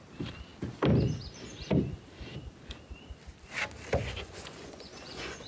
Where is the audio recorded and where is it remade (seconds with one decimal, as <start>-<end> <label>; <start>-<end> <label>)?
0.0-4.0 recorded; 4.0-5.5 remade